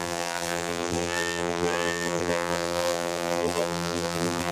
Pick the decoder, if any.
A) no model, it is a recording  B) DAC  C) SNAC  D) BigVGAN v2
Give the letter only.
D